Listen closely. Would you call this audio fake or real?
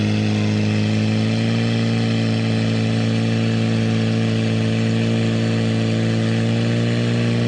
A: real